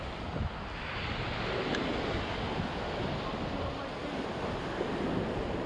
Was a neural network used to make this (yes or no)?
no